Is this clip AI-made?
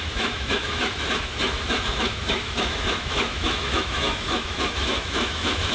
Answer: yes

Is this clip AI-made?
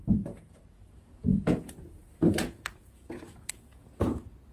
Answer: yes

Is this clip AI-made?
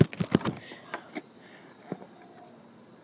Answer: no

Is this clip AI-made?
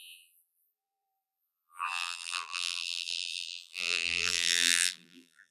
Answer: yes